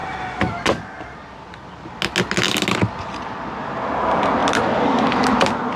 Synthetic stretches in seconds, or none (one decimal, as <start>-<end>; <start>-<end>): 3.5-4.4